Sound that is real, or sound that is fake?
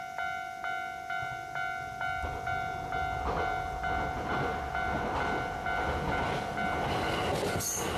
real